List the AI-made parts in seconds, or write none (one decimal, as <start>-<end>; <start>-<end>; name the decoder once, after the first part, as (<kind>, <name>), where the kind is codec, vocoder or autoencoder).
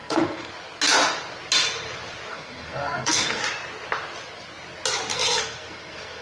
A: 0.0-0.5 (codec, SNAC); 2.3-3.4; 5.1-6.2